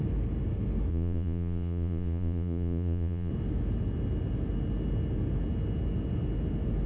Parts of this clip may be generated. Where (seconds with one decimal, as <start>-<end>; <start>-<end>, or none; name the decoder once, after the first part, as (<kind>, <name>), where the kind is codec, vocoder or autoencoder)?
0.9-3.3 (vocoder, Vocos)